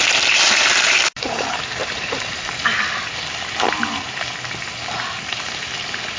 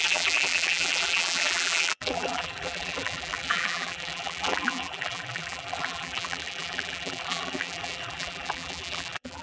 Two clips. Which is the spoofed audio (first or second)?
second